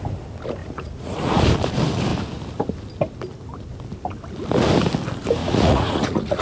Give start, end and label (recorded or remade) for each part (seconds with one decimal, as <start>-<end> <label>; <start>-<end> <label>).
0.0-0.6 recorded; 0.6-1.4 remade; 1.4-5.4 recorded; 5.4-6.4 remade